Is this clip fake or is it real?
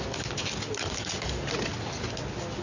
real